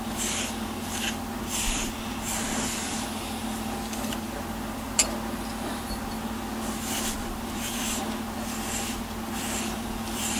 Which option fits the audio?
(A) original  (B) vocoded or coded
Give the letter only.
B